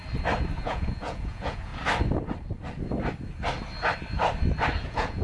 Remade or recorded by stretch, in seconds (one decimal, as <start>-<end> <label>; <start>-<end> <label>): 0.0-0.6 recorded; 0.6-1.7 remade; 1.7-4.8 recorded; 4.8-5.2 remade